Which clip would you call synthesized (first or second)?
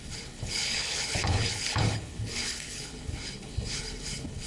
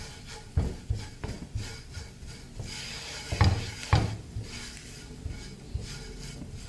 first